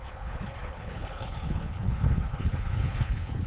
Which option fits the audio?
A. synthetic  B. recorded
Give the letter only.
A